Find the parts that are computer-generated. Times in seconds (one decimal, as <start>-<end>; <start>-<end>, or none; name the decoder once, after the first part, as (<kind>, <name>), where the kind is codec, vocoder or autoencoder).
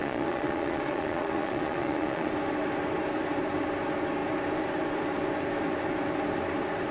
0.0-2.3 (vocoder, Vocos)